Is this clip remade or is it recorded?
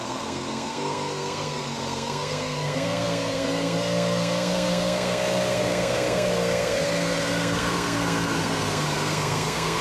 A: remade